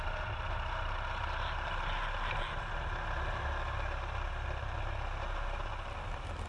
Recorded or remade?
recorded